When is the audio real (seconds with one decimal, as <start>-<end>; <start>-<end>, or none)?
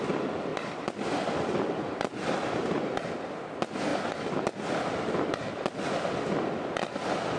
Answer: 0.0-0.5; 1.9-3.9; 4.4-7.4